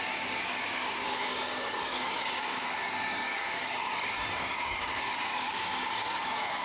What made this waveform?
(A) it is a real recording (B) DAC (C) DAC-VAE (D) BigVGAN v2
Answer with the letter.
B